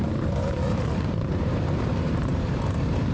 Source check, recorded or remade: remade